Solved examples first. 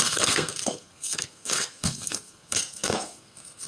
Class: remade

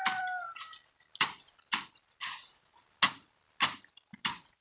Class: recorded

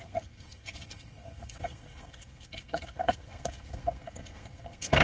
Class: remade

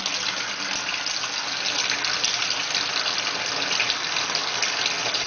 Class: recorded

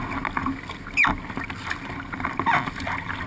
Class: recorded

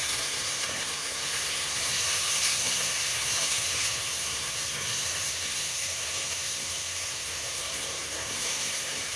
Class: remade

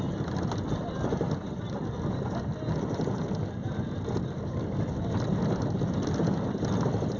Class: recorded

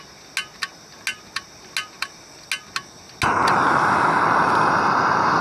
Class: recorded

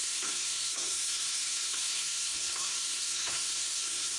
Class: remade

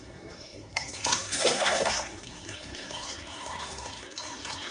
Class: remade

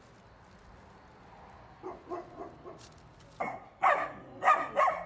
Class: recorded